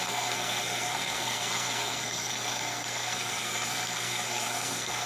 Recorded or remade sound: remade